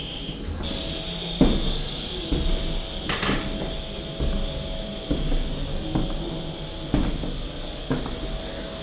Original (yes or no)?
yes